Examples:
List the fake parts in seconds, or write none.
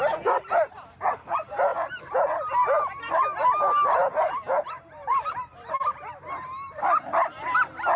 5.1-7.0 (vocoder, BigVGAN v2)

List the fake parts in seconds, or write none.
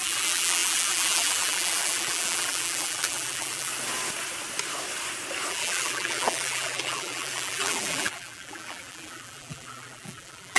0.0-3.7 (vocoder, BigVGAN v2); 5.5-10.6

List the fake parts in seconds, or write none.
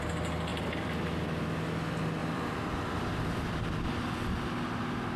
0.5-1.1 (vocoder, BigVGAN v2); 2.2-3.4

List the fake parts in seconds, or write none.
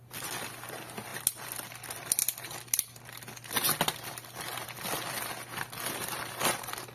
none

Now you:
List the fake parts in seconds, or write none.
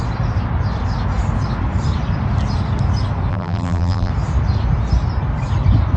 3.3-4.1 (vocoder, BigVGAN v2)